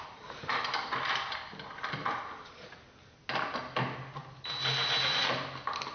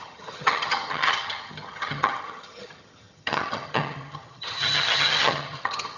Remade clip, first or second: second